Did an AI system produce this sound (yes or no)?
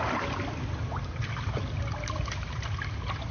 no